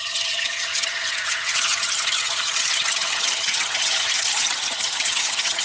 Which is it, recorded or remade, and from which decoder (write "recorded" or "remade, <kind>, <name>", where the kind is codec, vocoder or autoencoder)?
remade, vocoder, HiFi-GAN